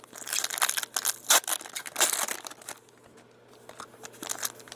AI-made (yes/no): no